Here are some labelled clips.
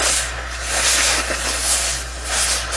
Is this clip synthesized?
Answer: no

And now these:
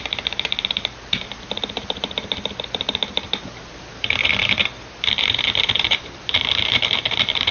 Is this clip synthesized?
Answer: yes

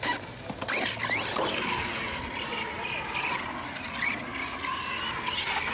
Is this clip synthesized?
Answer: no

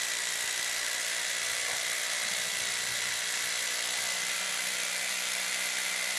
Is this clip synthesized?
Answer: yes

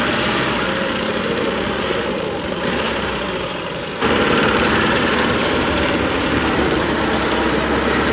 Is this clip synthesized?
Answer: yes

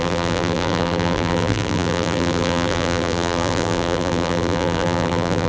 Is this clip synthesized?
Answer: yes